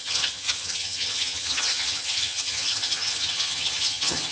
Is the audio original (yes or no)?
no